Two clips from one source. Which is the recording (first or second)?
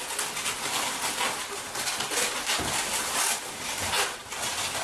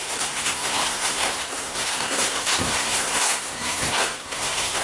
first